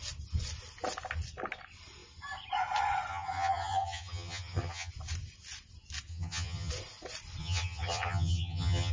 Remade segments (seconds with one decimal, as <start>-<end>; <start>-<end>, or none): 3.1-4.9; 6.1-6.7; 7.4-8.9

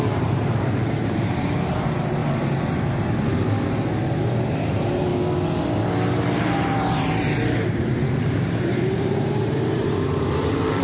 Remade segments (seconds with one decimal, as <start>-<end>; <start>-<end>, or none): 0.0-2.2; 4.5-5.1; 6.4-10.8